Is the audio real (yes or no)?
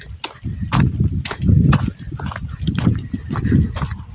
yes